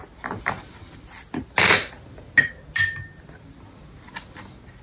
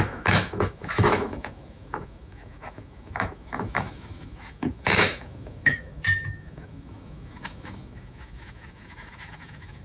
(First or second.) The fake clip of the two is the second